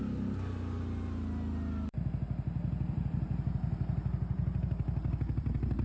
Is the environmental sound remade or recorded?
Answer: recorded